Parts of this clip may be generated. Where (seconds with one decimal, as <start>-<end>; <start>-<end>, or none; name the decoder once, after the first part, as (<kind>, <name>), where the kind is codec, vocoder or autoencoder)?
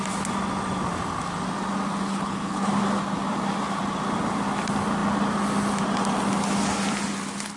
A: 2.1-2.7 (codec, HILCodec)